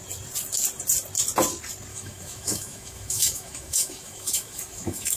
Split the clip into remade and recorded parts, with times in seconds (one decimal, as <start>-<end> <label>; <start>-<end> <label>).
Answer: 0.0-1.9 recorded; 1.9-5.2 remade